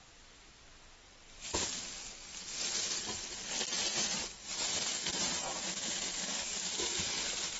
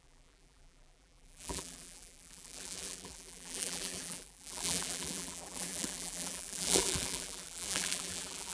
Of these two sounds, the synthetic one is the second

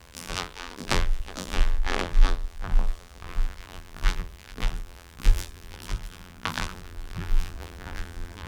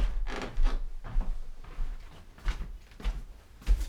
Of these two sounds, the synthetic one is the first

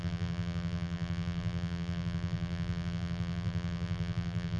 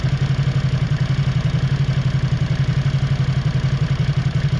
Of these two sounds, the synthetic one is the first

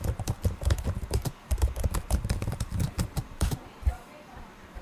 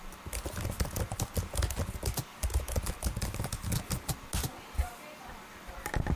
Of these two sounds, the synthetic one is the first